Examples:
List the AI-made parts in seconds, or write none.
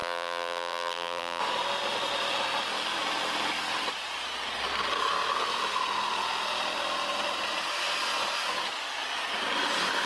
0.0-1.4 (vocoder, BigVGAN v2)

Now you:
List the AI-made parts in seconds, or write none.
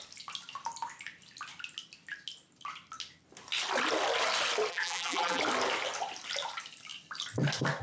4.7-5.4 (vocoder, BigVGAN v2)